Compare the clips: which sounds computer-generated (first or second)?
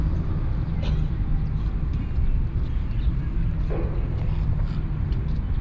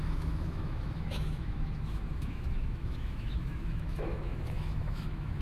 second